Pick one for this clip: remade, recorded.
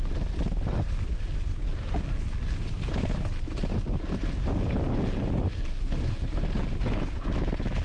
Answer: recorded